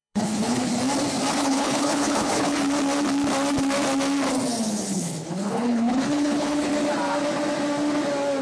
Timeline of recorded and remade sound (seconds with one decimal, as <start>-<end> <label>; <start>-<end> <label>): 0.0-0.7 remade; 0.7-1.3 recorded; 1.3-2.6 remade; 2.6-4.7 recorded; 4.7-6.7 remade; 6.7-8.4 recorded